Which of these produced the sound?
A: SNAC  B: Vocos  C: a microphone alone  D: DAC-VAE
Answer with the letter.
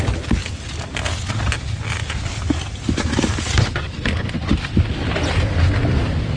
C